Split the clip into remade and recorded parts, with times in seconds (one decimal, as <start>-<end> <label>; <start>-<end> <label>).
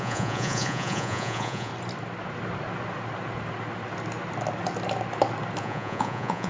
0.0-1.7 remade; 1.7-5.6 recorded; 5.6-6.5 remade